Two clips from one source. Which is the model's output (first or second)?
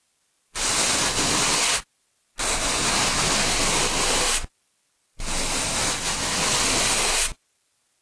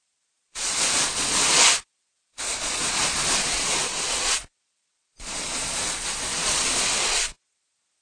second